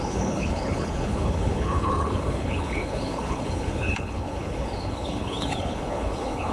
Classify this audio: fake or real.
fake